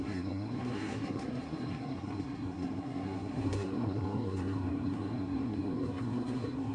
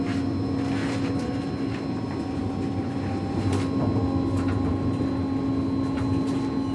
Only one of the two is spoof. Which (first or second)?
first